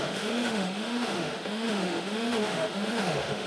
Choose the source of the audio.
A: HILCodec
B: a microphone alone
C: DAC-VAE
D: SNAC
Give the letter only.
C